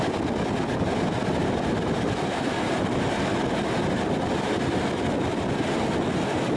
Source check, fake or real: real